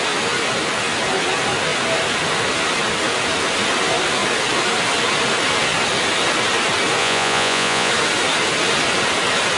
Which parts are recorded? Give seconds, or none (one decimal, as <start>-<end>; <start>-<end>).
0.0-7.0; 7.9-9.6